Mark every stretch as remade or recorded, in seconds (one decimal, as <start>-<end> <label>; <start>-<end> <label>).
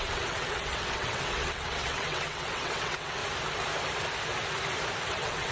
0.0-3.2 remade; 3.2-5.1 recorded; 5.1-5.5 remade